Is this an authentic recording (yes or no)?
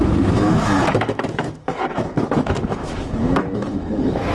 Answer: no